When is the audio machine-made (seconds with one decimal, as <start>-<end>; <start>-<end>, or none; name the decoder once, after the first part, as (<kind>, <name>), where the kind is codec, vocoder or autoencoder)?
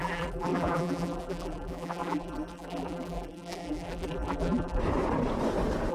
0.0-4.8 (vocoder, BigVGAN v2)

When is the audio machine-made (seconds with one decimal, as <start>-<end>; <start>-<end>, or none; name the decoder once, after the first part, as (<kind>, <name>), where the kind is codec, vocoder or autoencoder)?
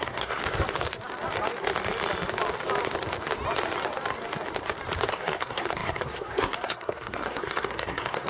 0.0-0.4 (codec, SNAC); 5.1-8.3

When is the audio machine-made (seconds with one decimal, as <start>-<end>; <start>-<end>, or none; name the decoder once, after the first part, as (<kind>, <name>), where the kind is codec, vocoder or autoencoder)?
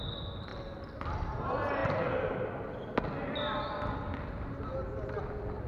none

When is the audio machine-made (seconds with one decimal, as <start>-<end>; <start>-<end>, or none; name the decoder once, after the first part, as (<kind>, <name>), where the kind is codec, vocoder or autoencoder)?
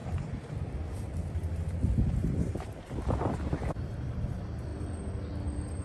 2.2-4.2 (vocoder, BigVGAN v2)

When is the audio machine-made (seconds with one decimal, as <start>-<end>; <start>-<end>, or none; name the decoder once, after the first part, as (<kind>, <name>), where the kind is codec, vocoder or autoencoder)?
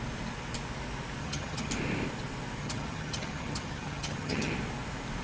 1.2-1.7 (vocoder, HiFi-GAN); 2.6-4.5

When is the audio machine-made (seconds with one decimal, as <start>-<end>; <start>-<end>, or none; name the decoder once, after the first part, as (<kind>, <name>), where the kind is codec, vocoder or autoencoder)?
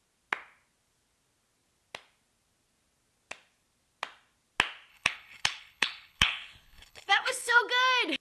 4.9-7.6 (codec, HILCodec)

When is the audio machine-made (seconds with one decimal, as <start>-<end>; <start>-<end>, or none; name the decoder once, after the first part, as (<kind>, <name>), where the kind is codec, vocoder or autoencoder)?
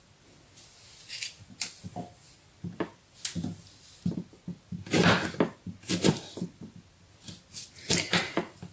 none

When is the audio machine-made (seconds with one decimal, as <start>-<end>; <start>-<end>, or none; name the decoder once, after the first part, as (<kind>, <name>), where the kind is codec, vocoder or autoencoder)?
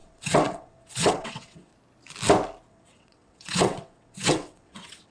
0.0-1.7 (vocoder, WaveNeXt); 2.7-5.1